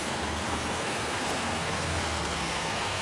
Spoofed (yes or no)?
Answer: yes